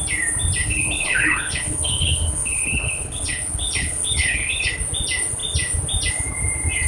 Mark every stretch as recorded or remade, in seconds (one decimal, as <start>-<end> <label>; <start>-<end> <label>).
0.0-0.6 recorded; 0.6-4.7 remade; 4.7-6.9 recorded